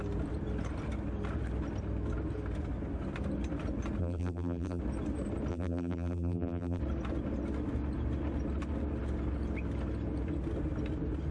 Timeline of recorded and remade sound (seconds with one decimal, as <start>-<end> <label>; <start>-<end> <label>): 0.0-4.0 recorded; 4.0-4.8 remade; 4.8-5.5 recorded; 5.5-6.8 remade; 6.8-11.3 recorded